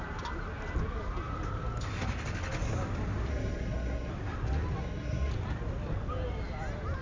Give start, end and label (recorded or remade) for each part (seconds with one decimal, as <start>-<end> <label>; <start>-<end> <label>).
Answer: 0.0-3.3 recorded; 3.3-4.1 remade; 4.1-4.8 recorded; 4.8-5.3 remade; 5.3-7.0 recorded